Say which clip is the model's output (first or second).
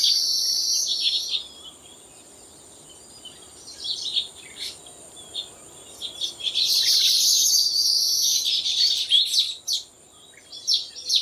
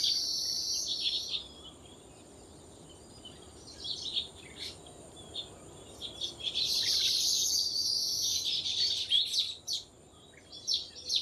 second